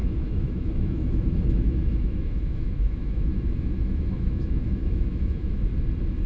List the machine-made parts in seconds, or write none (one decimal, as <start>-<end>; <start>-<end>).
0.0-5.7